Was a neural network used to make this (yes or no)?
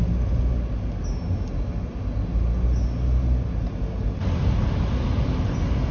no